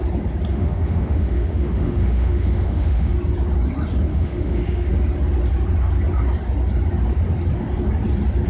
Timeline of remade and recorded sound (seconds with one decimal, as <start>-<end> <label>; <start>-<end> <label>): 0.0-0.5 recorded; 0.5-3.1 remade; 3.1-4.1 recorded; 4.1-4.9 remade; 4.9-8.5 recorded